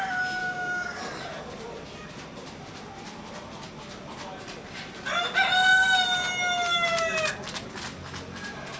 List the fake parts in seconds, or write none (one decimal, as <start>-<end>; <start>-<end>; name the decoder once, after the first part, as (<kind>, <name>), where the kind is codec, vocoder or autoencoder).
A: 0.4-1.0 (codec, DAC)